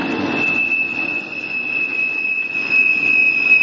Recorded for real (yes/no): no